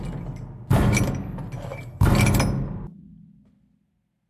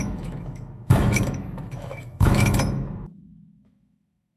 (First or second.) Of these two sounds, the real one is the first